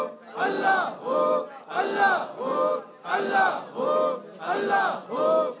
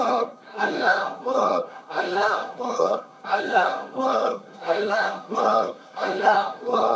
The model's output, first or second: second